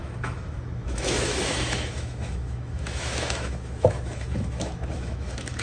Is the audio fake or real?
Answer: fake